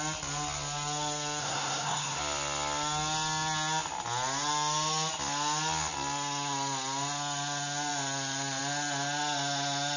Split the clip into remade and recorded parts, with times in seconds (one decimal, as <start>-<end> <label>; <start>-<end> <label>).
0.0-1.4 recorded; 1.4-2.2 remade; 2.2-10.0 recorded